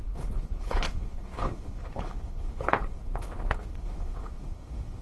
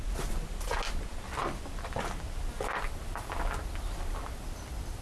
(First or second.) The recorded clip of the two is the second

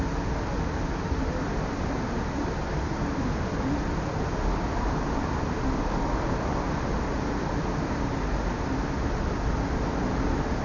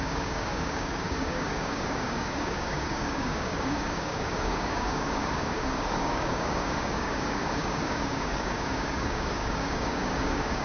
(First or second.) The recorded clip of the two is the first